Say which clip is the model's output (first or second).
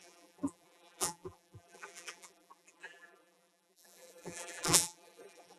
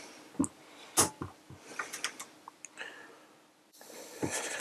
first